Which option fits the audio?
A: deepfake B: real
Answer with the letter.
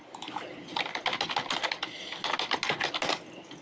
B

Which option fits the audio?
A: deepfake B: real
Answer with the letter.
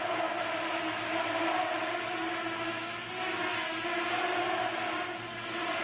B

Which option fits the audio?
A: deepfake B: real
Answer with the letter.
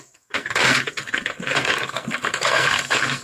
A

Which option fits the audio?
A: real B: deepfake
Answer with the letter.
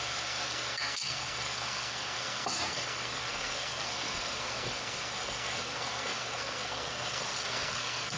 B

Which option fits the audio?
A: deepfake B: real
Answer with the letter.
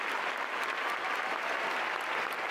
B